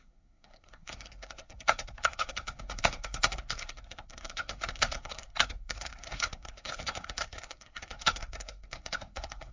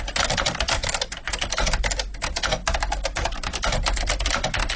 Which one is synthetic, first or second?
first